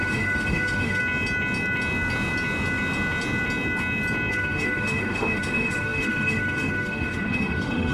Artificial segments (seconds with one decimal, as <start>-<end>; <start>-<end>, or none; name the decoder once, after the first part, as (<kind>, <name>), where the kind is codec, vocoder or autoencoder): 0.0-1.0 (autoencoder, DAC-VAE); 4.3-7.9